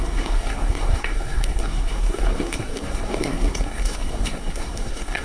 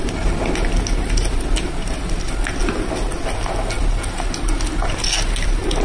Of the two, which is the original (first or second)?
second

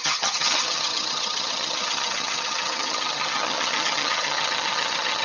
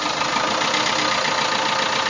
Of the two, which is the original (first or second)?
second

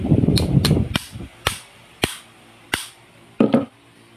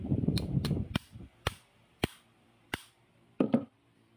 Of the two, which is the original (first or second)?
first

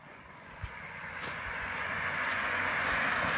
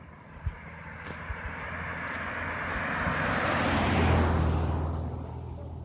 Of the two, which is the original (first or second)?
second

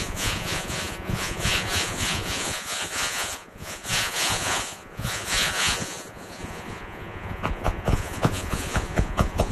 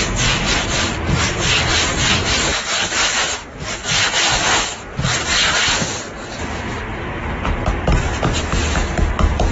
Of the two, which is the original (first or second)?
second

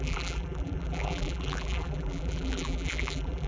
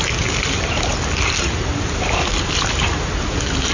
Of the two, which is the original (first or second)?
second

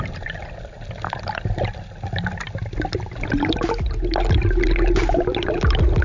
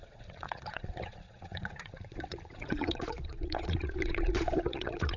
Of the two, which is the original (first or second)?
first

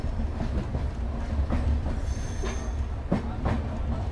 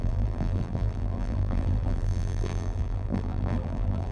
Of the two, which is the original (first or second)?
first